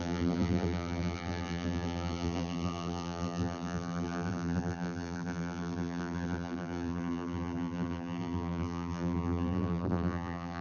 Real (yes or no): no